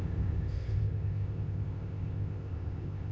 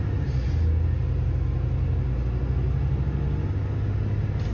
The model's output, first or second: first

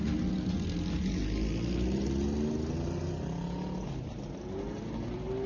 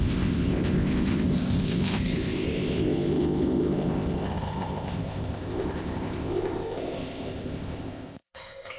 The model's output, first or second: second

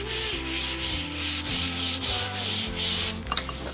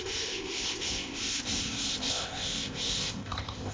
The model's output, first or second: second